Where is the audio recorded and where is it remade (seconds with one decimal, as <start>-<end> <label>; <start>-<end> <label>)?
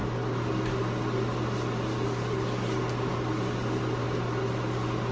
0.0-5.1 recorded